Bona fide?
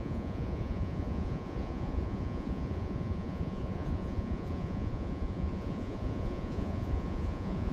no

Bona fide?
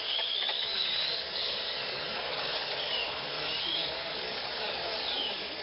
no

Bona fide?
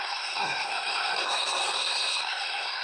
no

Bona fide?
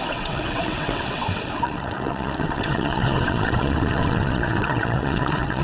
no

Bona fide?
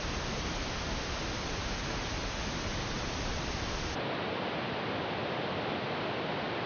yes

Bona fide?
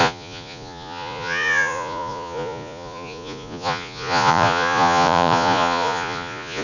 no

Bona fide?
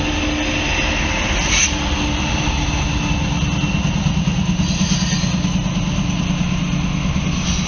yes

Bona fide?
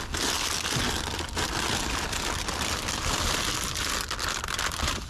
yes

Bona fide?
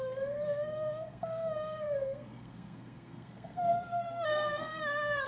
no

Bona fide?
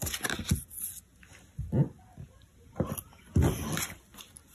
yes